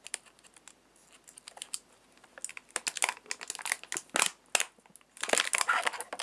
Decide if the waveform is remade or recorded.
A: recorded